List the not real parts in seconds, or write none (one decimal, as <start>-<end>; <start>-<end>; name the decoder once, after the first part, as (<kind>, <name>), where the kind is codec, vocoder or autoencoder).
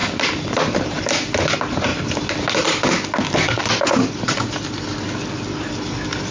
0.0-1.0 (vocoder, BigVGAN v2)